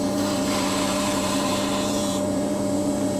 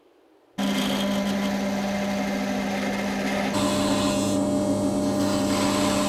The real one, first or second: second